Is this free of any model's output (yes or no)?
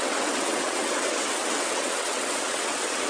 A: no